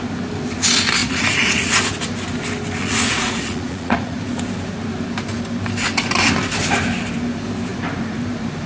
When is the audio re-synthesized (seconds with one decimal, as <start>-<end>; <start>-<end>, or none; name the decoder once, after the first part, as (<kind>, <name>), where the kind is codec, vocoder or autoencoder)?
1.0-1.8 (vocoder, Vocos); 2.8-4.2